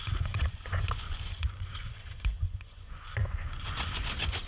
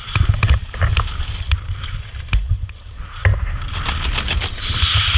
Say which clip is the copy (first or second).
first